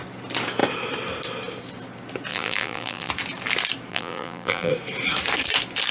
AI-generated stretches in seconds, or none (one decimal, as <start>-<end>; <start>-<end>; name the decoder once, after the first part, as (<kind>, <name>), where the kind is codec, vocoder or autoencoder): 2.3-3.1 (vocoder, BigVGAN v2); 3.9-4.7